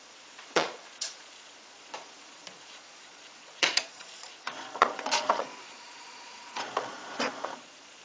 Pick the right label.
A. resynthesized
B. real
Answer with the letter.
A